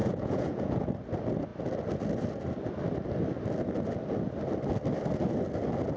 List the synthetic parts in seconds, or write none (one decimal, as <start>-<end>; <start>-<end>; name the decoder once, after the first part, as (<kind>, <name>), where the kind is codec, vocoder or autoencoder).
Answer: 0.0-0.9 (vocoder, Vocos)

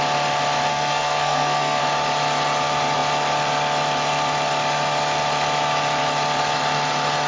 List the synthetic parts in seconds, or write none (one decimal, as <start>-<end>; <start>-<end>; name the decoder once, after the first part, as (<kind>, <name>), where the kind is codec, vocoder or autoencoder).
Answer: 0.7-1.8 (codec, SNAC)

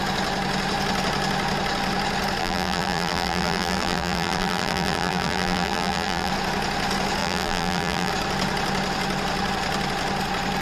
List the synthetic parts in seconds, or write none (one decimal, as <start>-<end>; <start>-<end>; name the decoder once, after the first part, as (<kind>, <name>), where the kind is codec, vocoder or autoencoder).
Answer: 2.4-6.3 (vocoder, BigVGAN v2); 7.2-8.1

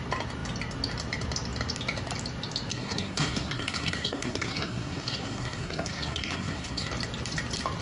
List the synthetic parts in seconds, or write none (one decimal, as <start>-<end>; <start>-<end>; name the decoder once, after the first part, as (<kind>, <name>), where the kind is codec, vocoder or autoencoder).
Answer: 2.7-6.9 (codec, SNAC)

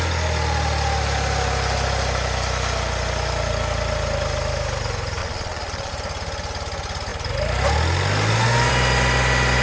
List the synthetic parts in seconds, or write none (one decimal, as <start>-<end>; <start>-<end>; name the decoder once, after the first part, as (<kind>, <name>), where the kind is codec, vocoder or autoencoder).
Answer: 5.2-5.9 (vocoder, Vocos)